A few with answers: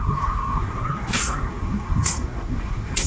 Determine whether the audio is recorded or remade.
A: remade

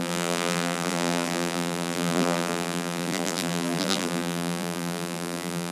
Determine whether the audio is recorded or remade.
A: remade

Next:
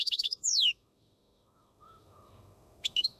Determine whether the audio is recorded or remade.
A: remade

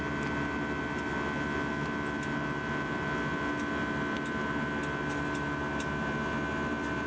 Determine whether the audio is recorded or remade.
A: recorded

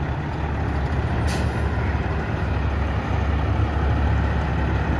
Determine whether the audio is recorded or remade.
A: recorded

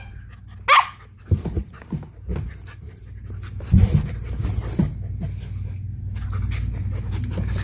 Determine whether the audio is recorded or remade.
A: recorded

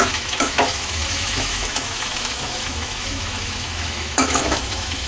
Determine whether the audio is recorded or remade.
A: remade